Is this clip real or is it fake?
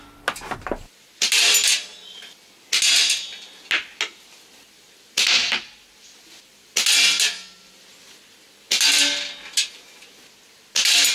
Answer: real